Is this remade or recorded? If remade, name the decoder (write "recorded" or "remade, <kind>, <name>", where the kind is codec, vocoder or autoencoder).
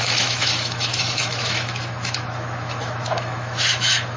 remade, autoencoder, DAC-VAE